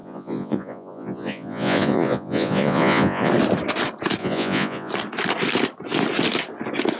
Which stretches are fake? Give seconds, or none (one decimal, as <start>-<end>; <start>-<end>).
0.0-3.3; 4.2-4.9